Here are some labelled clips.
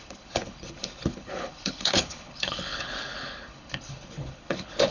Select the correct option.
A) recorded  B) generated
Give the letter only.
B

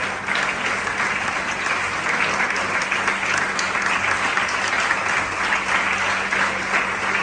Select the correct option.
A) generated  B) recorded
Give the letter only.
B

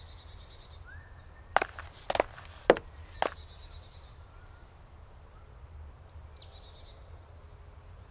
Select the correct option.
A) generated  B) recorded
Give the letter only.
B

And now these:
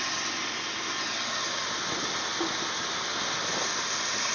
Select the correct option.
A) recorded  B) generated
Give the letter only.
A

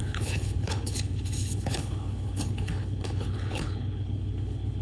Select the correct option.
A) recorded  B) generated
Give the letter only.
B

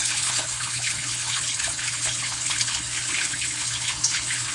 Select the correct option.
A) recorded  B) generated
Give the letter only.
B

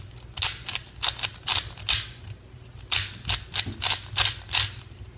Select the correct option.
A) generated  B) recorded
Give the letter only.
B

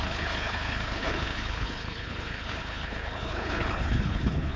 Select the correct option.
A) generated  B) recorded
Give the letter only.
A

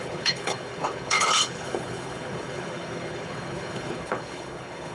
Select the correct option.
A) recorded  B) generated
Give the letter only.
B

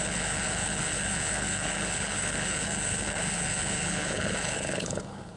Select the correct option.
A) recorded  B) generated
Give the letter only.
B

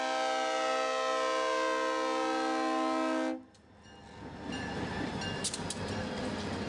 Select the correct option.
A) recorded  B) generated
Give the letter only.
A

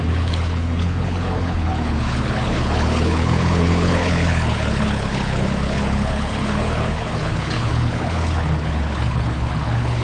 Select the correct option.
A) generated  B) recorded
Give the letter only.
A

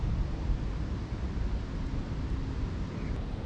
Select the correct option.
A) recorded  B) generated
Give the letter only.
A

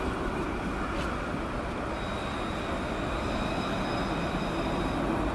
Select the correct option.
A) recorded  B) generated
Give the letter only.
A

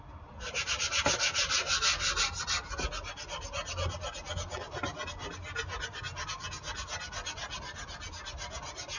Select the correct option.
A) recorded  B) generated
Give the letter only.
A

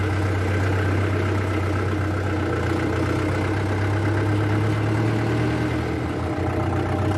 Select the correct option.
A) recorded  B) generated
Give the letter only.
A